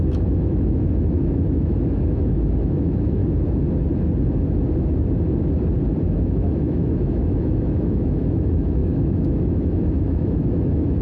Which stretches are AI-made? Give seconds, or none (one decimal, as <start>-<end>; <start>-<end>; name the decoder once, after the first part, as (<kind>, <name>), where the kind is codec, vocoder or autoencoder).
0.0-3.2 (autoencoder, DAC-VAE); 6.2-11.0